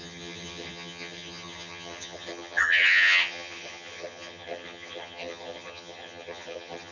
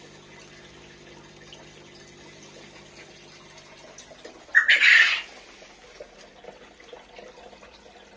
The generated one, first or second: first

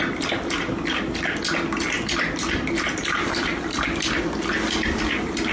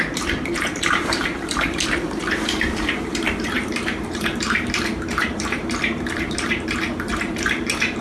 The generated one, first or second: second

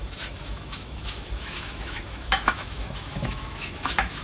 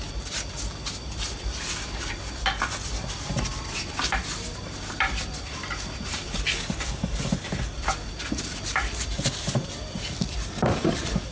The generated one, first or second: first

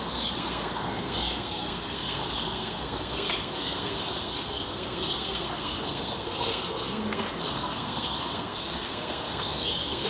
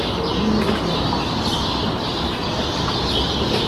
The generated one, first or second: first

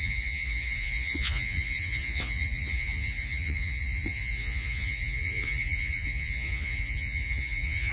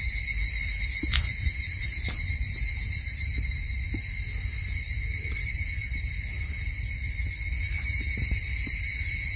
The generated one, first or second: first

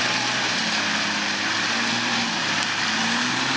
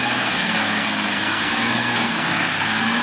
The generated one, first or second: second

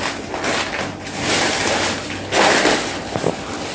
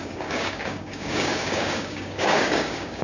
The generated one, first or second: second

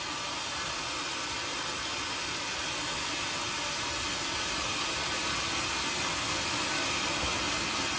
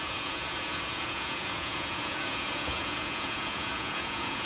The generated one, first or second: second